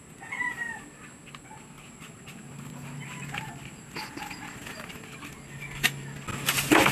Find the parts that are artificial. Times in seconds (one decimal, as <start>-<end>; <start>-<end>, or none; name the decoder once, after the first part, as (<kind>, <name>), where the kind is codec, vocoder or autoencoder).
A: none